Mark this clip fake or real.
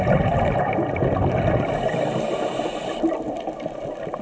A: real